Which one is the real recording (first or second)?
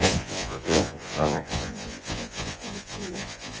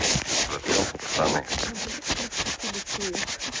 second